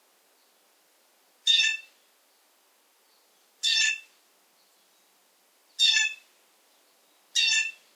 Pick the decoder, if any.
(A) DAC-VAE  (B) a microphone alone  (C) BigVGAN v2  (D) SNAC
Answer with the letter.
B